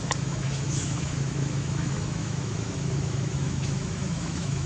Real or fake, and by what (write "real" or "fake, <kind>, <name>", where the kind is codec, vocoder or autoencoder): fake, autoencoder, DAC-VAE